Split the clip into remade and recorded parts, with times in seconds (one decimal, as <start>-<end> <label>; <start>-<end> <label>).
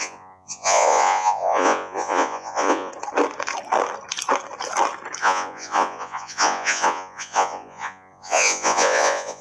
0.0-2.9 remade; 2.9-5.2 recorded; 5.2-9.4 remade